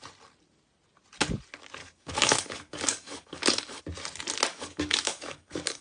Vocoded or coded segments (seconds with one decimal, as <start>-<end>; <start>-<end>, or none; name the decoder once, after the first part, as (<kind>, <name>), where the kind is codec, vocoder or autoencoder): 1.8-3.8 (codec, DAC); 4.5-5.8